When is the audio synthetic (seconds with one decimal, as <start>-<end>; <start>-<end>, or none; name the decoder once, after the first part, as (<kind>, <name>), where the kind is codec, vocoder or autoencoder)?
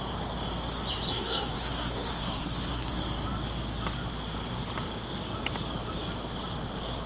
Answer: 1.1-2.9 (codec, SNAC)